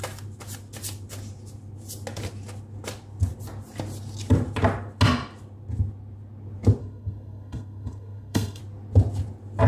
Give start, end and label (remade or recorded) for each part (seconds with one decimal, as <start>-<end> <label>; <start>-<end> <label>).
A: 0.0-6.8 recorded; 6.8-8.6 remade; 8.6-9.7 recorded